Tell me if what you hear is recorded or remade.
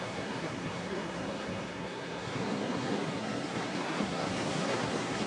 remade